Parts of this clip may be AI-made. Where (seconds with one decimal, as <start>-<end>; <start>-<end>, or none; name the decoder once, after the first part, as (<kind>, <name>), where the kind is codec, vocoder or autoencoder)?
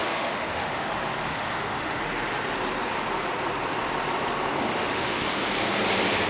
0.0-0.9 (autoencoder, DAC-VAE); 1.3-2.0; 4.7-5.2